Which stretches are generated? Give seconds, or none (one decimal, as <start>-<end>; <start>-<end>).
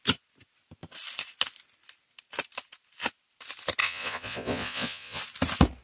3.8-5.2